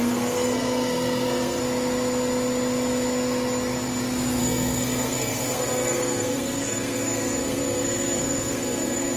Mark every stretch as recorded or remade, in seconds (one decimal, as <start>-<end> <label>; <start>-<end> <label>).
0.0-1.6 remade; 1.6-4.4 recorded; 4.4-9.2 remade